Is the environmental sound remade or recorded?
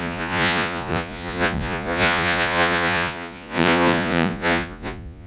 remade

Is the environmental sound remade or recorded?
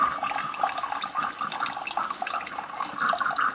recorded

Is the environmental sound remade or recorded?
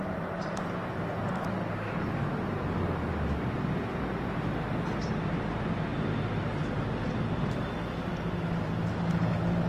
recorded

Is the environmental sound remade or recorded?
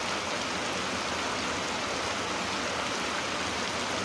recorded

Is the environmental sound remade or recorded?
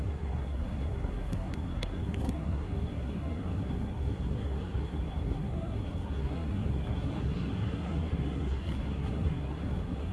remade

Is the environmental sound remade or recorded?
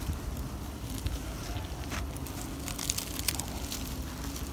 recorded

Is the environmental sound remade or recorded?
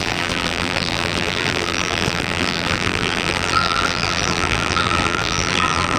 remade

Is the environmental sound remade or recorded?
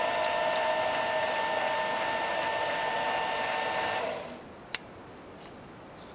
recorded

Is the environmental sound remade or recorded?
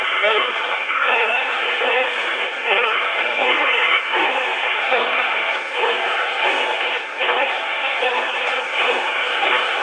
remade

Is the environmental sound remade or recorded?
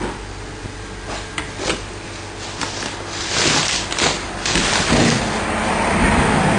recorded